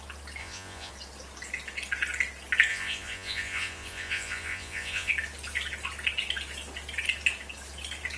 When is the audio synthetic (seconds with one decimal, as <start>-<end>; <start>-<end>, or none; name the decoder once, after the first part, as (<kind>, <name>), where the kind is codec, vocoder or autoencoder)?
0.4-0.9 (vocoder, Vocos); 2.7-5.1